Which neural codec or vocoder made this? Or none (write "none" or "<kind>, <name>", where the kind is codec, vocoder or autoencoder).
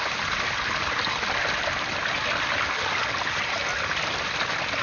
none